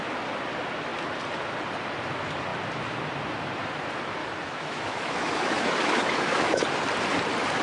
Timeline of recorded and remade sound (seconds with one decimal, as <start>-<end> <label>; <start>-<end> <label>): 0.0-4.2 recorded; 4.2-6.6 remade; 6.6-7.6 recorded